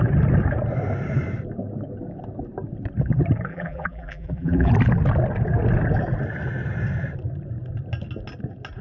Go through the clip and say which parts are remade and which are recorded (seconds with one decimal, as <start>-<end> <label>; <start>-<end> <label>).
0.0-3.5 recorded; 3.5-4.7 remade; 4.7-8.8 recorded